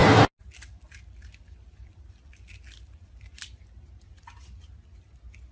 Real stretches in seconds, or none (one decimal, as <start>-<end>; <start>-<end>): 0.0-5.5